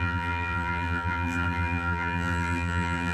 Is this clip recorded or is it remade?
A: remade